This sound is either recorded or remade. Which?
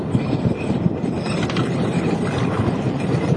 recorded